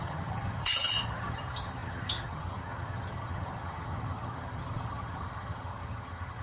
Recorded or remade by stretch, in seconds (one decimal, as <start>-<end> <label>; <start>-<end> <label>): 0.0-6.4 remade

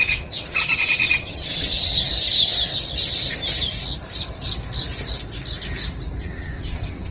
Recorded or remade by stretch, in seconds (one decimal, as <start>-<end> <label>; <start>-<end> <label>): 0.0-1.9 remade; 1.9-6.2 recorded; 6.2-7.1 remade

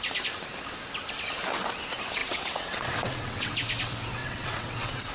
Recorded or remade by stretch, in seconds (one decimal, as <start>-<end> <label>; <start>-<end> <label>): 0.0-2.2 recorded; 2.2-3.5 remade; 3.5-4.2 recorded; 4.2-5.1 remade

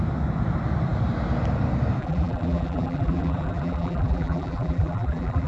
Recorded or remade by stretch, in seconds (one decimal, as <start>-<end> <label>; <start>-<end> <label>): 0.0-2.0 recorded; 2.0-5.5 remade

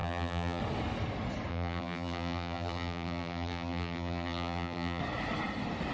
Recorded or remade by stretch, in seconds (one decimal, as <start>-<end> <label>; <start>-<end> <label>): 0.0-0.6 remade; 0.6-1.5 recorded; 1.5-5.0 remade; 5.0-5.9 recorded

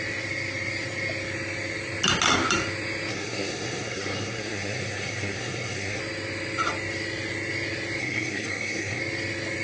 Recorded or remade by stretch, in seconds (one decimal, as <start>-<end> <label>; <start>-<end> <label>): 0.0-3.1 recorded; 3.1-6.0 remade; 6.0-8.0 recorded; 8.0-9.0 remade; 9.0-9.6 recorded

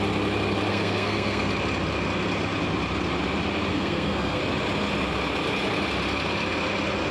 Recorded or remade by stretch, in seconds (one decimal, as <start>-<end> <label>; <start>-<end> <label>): 0.0-0.7 recorded; 0.7-1.5 remade; 1.5-3.7 recorded; 3.7-4.4 remade; 4.4-7.1 recorded